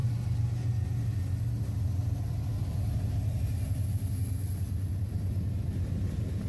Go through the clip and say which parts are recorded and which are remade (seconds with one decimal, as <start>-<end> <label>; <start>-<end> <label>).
0.0-6.5 recorded